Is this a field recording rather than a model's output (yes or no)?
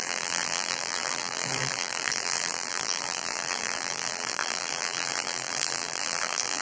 no